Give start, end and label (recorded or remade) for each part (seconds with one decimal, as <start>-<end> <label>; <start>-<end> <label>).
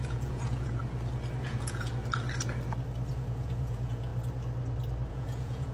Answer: 0.0-0.8 remade; 0.8-1.4 recorded; 1.4-1.9 remade; 1.9-3.1 recorded; 3.1-4.1 remade; 4.1-5.1 recorded; 5.1-5.7 remade